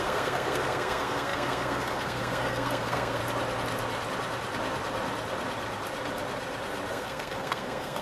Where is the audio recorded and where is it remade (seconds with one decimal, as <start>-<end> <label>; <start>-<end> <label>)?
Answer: 0.0-3.2 remade; 3.2-6.9 recorded; 6.9-8.0 remade